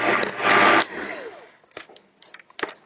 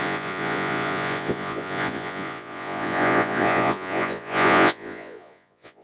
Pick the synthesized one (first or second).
second